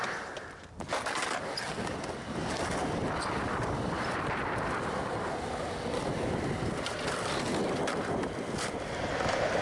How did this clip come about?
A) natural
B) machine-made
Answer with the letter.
A